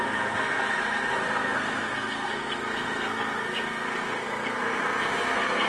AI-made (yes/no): yes